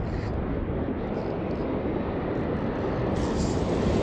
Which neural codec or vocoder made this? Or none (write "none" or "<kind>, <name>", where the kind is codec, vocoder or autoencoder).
none